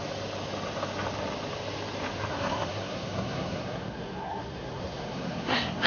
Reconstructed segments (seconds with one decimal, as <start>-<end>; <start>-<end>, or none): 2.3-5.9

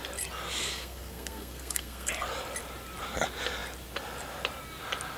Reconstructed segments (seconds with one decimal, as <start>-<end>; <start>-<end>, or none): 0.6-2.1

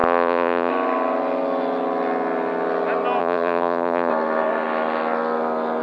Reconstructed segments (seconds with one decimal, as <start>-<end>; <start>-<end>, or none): 0.0-0.7; 3.2-4.1

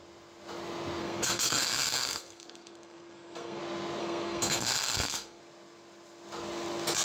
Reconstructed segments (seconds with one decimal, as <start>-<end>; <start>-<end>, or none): 1.0-3.6; 4.0-5.4